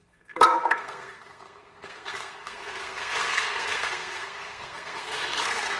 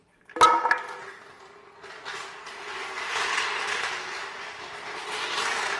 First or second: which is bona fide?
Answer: second